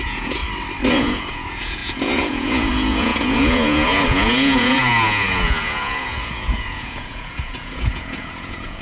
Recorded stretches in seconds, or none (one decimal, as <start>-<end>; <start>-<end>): 0.4-0.9